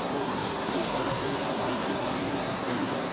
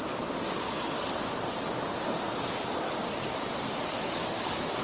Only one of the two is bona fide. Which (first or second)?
second